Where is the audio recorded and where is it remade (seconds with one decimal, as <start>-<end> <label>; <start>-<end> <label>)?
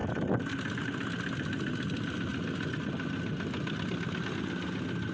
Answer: 0.0-5.1 recorded